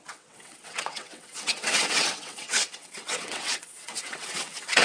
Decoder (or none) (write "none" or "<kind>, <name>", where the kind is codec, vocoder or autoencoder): vocoder, WaveNeXt